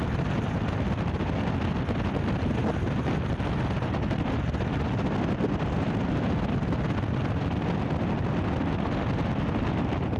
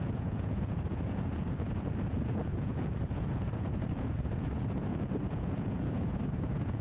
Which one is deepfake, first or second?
second